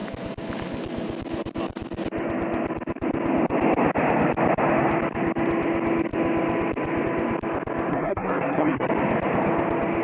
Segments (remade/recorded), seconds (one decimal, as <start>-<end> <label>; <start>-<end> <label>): 0.0-7.9 recorded; 7.9-8.9 remade; 8.9-10.0 recorded